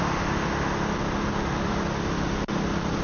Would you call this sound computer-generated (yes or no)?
no